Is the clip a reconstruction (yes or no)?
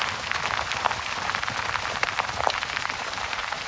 no